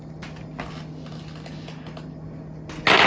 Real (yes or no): yes